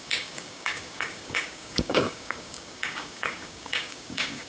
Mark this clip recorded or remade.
remade